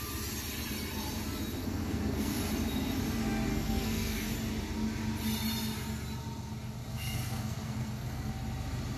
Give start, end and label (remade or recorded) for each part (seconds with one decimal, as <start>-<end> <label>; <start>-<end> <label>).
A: 0.0-1.6 recorded; 1.6-2.4 remade; 2.4-3.5 recorded; 3.5-4.3 remade; 4.3-6.9 recorded; 6.9-8.3 remade; 8.3-9.0 recorded